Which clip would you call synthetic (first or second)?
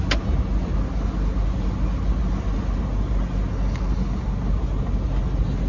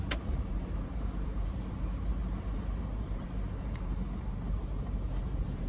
second